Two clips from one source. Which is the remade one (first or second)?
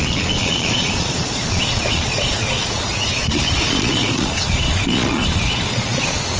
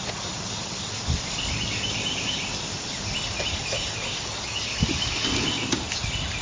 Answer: first